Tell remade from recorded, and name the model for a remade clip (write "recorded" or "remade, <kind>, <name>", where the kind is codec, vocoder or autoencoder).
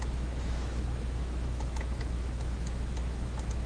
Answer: remade, autoencoder, DAC-VAE